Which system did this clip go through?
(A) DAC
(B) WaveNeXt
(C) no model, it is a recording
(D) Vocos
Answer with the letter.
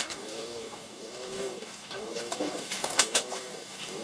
A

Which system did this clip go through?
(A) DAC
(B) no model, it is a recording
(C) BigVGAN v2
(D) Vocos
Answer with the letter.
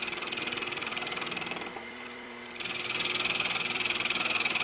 C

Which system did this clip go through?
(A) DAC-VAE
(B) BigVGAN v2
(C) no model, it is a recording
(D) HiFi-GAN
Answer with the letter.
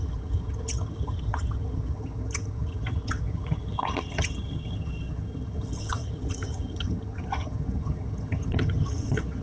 D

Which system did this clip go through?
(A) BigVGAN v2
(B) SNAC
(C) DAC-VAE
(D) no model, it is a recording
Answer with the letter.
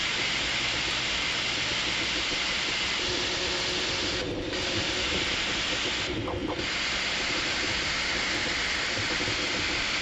D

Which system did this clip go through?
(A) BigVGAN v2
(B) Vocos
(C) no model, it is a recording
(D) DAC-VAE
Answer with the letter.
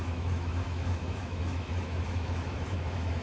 D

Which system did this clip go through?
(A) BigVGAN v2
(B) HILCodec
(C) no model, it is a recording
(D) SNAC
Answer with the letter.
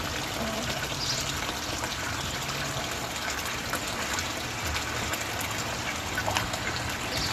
C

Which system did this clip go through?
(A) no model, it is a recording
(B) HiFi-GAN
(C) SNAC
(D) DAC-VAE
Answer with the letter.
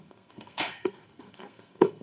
C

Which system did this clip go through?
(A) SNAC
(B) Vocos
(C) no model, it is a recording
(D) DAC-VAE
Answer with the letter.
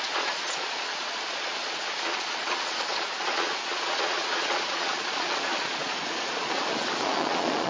B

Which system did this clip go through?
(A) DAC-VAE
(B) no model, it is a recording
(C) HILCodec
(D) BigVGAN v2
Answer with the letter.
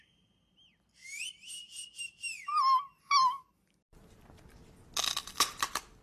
B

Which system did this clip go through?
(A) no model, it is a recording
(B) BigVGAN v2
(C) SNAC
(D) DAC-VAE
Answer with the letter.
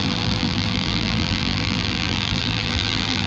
B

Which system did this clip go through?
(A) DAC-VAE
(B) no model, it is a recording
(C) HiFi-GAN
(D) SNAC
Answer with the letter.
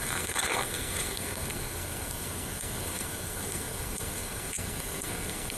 D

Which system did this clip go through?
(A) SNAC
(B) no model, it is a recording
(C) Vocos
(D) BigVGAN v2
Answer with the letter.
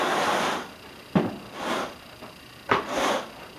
B